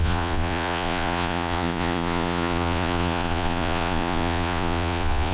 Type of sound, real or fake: fake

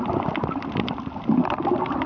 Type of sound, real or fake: real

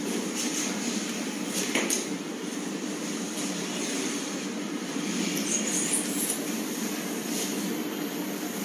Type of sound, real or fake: fake